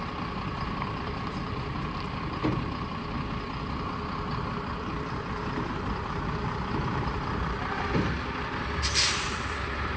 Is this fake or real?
fake